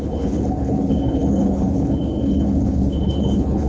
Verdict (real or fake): fake